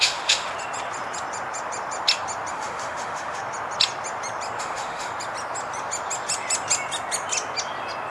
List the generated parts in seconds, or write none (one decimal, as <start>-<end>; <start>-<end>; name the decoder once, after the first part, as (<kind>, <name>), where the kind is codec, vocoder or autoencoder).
0.0-0.5 (autoencoder, DAC-VAE); 2.5-3.4; 4.6-5.1